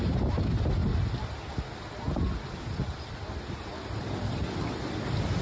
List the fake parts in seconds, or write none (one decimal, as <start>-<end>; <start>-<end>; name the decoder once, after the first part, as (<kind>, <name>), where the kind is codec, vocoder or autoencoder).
none